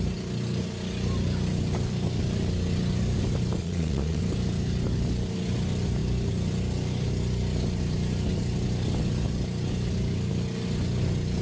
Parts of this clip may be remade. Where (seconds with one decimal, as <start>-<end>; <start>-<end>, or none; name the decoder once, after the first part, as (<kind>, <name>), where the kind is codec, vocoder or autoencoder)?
3.6-4.2 (vocoder, Vocos)